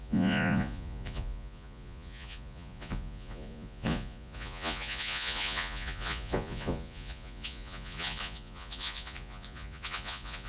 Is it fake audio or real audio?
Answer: fake